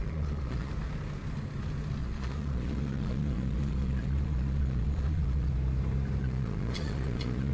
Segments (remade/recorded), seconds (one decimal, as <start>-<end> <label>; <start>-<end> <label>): 0.0-0.7 remade; 0.7-2.0 recorded; 2.0-5.5 remade; 5.5-6.2 recorded; 6.2-7.5 remade